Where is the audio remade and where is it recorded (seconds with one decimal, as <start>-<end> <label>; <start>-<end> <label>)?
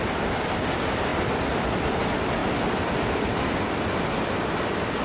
0.0-2.4 recorded; 2.4-4.0 remade; 4.0-5.0 recorded